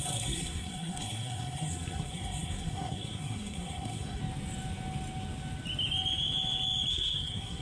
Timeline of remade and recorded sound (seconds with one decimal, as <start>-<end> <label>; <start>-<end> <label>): 0.0-4.2 remade; 4.2-6.9 recorded; 6.9-7.6 remade